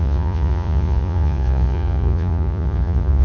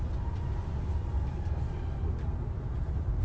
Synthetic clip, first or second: first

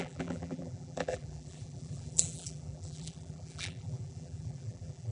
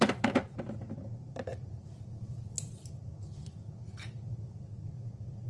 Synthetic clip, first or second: first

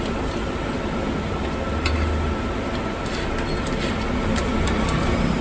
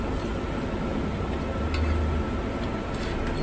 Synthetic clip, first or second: first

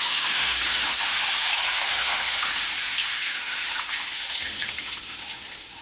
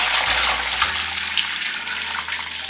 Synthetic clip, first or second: first